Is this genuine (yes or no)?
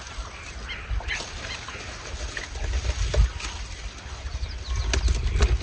yes